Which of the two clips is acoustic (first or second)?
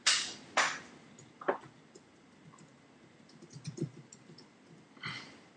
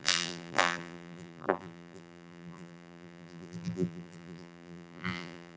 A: first